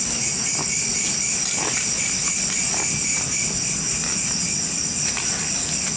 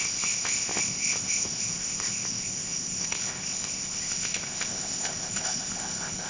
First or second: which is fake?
second